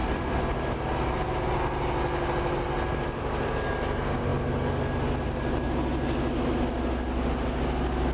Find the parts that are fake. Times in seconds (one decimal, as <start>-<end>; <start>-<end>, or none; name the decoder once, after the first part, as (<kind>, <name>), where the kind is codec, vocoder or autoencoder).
0.0-1.1 (vocoder, BigVGAN v2)